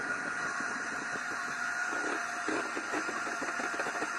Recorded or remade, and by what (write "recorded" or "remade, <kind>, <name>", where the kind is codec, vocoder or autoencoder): remade, vocoder, Vocos